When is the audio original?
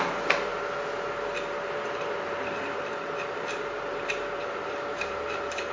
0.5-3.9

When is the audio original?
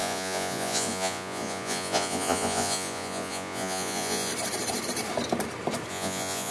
4.3-5.9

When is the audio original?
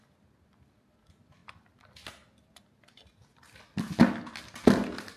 0.0-5.2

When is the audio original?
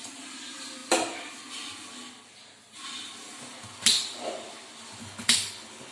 0.0-5.0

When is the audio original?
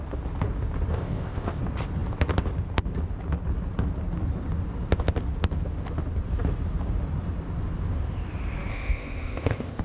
0.0-0.9; 1.6-8.7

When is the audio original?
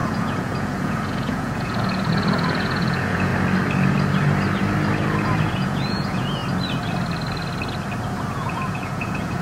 3.3-5.5; 6.4-8.3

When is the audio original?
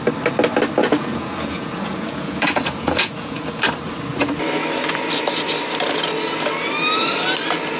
0.0-0.8; 3.6-7.8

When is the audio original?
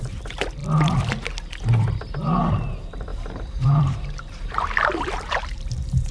0.6-2.5